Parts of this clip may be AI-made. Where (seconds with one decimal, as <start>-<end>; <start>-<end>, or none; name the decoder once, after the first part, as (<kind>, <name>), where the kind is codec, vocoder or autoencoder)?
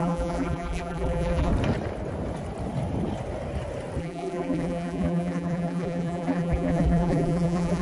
0.0-1.5 (vocoder, BigVGAN v2); 4.0-7.8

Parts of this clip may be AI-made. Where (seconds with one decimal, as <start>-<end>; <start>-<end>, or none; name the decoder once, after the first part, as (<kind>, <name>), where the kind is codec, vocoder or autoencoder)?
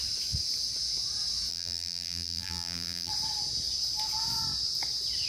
1.5-3.1 (vocoder, BigVGAN v2)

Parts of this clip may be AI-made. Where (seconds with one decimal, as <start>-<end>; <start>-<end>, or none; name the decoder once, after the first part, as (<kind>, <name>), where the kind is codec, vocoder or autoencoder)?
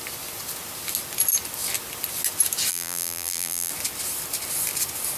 2.7-3.7 (vocoder, BigVGAN v2)